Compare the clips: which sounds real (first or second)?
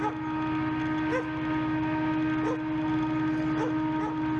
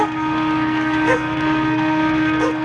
first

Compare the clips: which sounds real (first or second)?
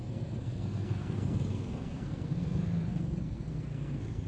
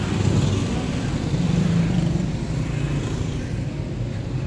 second